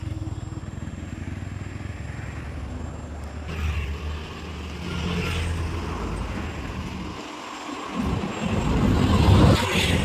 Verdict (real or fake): real